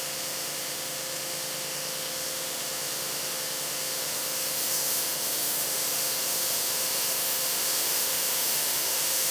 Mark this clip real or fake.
fake